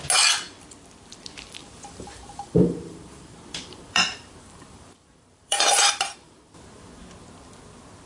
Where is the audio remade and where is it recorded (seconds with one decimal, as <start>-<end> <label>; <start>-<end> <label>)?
0.0-1.6 recorded; 1.6-6.5 remade; 6.5-8.1 recorded